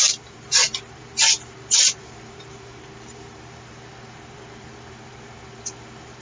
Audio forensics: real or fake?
fake